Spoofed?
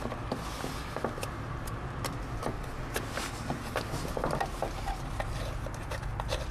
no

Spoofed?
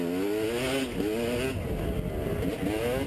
no